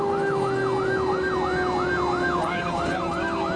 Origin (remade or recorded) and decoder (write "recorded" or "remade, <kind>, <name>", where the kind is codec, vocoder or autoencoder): recorded